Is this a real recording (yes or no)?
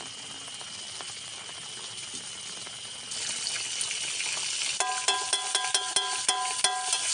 yes